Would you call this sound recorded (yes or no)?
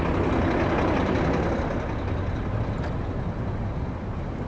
yes